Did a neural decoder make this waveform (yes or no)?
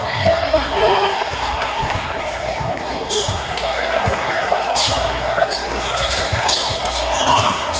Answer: yes